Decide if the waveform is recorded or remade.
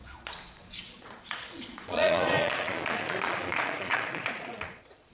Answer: remade